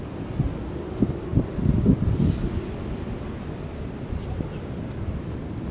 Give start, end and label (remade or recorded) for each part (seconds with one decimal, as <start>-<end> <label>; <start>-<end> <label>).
0.0-5.7 recorded